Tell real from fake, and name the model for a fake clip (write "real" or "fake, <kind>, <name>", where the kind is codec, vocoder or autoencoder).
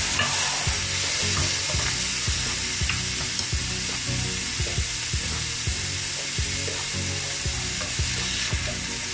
real